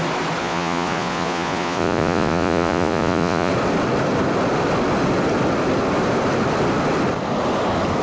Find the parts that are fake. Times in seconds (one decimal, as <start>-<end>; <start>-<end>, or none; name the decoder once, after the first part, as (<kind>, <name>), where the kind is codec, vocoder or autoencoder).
0.4-3.5 (vocoder, Vocos)